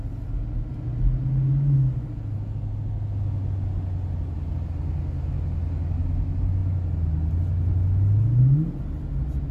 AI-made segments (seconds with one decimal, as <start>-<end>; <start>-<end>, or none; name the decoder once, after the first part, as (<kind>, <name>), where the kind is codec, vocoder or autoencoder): none